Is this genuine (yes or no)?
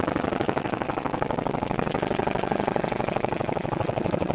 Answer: no